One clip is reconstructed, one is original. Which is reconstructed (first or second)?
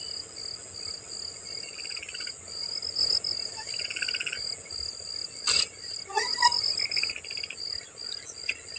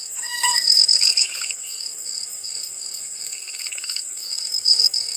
second